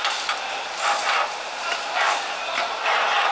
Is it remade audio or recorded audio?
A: recorded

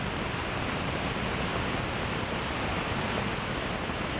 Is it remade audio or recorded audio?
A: recorded